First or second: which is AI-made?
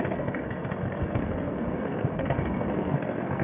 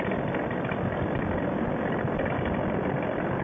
first